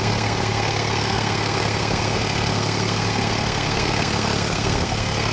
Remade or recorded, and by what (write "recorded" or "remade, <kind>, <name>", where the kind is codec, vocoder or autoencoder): remade, codec, SNAC